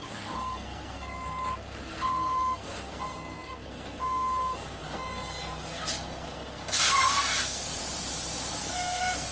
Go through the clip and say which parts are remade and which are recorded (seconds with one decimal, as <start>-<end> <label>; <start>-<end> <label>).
0.0-7.8 remade; 7.8-8.6 recorded; 8.6-9.3 remade